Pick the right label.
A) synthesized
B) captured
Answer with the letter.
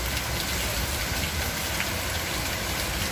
B